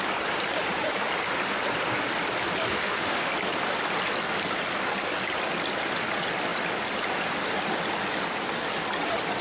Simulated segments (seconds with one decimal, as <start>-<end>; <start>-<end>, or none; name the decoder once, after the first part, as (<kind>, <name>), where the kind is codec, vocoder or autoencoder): 2.7-3.3 (autoencoder, DAC-VAE)